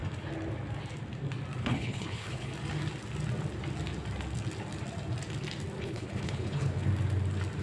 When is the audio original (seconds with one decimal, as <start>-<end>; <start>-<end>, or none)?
0.0-1.6; 2.5-5.8; 6.9-7.6